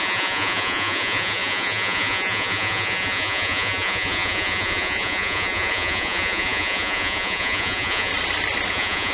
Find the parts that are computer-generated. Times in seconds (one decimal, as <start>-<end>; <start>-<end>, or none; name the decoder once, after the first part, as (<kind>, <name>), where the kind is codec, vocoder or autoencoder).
0.0-8.1 (vocoder, Vocos); 8.7-9.1